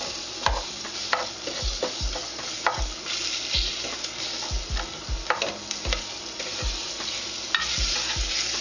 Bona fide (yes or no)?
yes